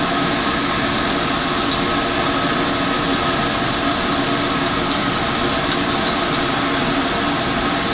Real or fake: real